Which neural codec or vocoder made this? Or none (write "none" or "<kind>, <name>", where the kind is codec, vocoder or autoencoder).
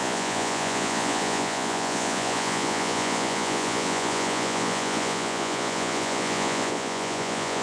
vocoder, Vocos